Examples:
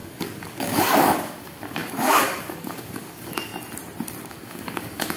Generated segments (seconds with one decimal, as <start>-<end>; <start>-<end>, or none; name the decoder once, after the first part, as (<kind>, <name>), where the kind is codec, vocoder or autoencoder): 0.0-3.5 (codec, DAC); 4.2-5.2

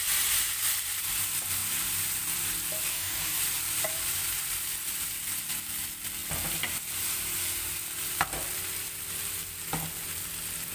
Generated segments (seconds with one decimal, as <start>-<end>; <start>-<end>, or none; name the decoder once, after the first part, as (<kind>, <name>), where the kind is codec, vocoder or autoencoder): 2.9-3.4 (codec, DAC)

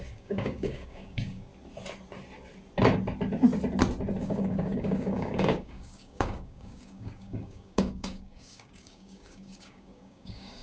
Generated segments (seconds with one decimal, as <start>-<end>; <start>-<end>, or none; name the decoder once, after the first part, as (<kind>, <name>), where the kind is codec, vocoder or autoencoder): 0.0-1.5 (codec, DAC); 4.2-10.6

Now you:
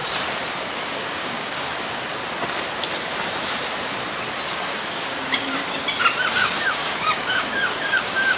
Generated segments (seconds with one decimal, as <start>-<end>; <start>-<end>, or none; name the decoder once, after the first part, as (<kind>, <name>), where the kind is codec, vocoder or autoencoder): 0.7-2.2 (codec, DAC); 4.4-5.6; 6.3-8.4